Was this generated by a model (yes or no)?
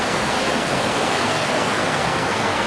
yes